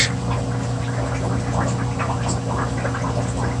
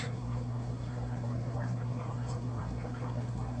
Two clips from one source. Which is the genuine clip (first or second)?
first